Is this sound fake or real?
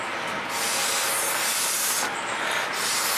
real